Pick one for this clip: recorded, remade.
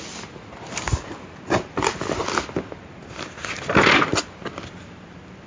recorded